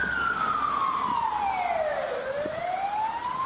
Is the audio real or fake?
real